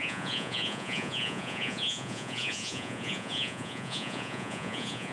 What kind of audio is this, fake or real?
fake